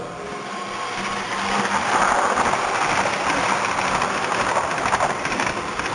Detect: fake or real real